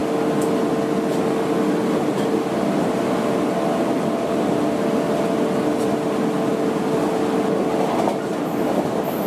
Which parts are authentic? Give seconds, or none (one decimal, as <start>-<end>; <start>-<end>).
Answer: 0.0-9.3

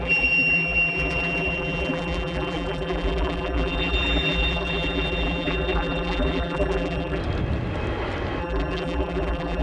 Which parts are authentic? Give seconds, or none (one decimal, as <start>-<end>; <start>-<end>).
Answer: 7.2-8.4

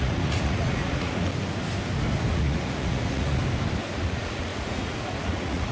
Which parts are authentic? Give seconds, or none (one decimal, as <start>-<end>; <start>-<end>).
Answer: 1.3-2.3; 3.4-3.9

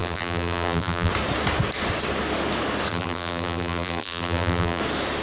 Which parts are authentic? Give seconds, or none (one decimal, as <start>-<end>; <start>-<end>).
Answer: 1.1-2.9; 4.8-5.2

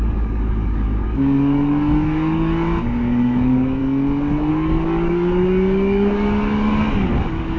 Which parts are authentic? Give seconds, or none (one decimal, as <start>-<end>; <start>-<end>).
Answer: 3.8-4.5

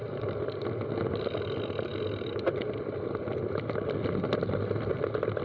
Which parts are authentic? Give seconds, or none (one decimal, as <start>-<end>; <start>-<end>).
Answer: 0.0-5.4

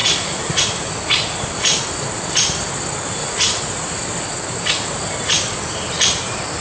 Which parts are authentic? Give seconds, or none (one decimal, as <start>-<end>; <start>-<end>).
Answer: 0.6-3.2; 4.0-6.6

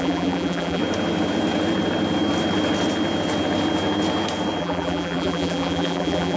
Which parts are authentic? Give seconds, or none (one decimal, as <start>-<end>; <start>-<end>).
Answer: 0.8-4.6